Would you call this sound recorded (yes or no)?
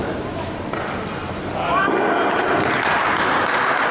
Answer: yes